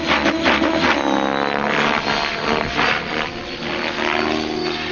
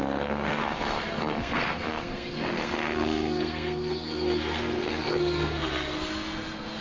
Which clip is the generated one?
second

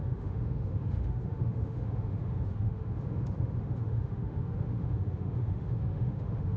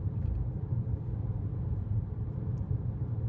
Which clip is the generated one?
first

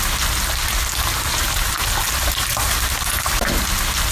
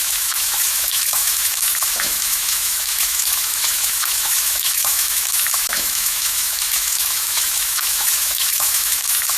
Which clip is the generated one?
second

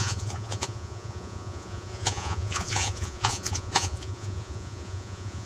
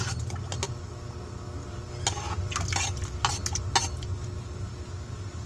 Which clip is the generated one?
first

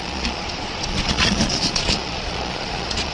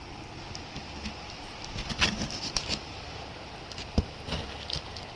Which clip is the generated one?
first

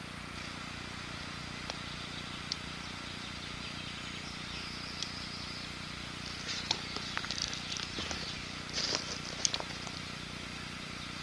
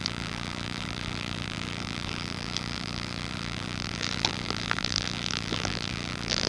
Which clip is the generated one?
second